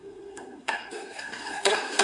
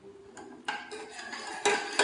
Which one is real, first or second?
second